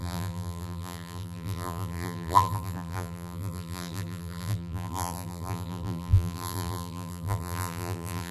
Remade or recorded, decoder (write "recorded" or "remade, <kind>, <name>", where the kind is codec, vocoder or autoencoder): remade, vocoder, BigVGAN v2